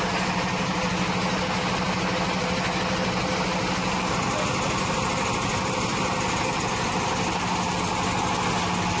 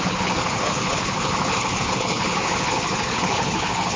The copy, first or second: second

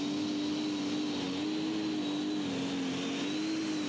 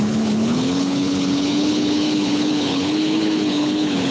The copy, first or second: second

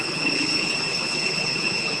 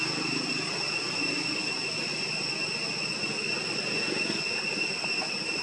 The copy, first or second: first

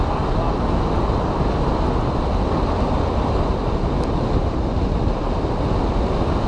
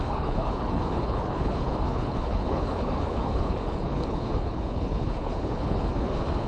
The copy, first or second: second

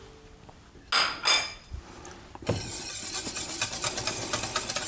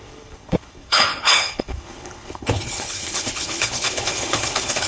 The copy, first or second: second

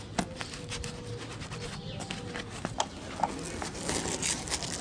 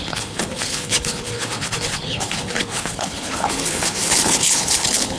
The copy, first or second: second